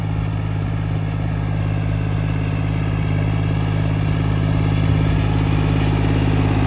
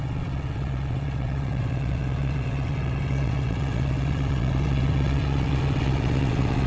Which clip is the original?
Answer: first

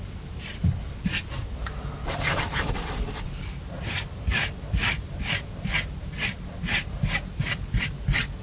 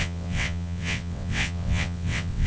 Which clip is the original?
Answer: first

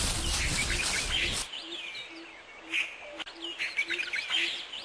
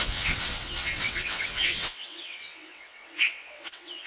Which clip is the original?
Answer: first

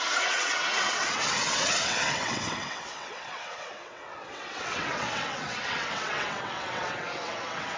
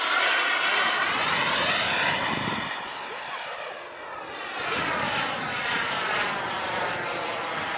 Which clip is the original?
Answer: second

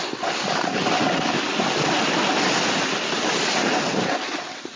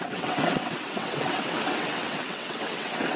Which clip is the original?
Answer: first